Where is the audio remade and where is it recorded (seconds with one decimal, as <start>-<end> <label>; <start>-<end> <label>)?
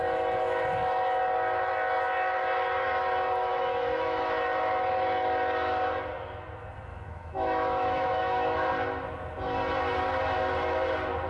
0.0-3.5 recorded; 3.5-4.2 remade; 4.2-6.9 recorded; 6.9-8.7 remade; 8.7-11.3 recorded